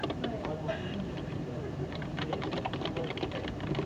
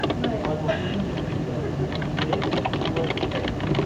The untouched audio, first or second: second